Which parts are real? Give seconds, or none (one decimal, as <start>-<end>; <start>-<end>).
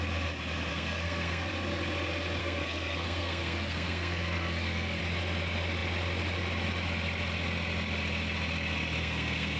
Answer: 0.0-0.7; 1.5-2.4; 5.0-9.0